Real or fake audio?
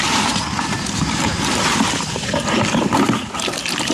real